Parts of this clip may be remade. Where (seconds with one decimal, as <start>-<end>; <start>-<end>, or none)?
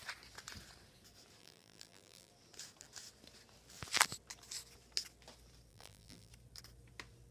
1.4-2.3; 5.7-6.3